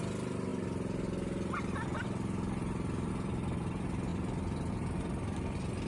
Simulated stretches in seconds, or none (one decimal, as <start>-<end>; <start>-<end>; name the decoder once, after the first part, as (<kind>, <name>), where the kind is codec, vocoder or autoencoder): none